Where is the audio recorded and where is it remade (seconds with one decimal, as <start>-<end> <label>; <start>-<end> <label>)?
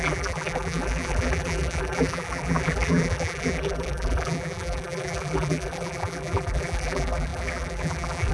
0.0-8.3 remade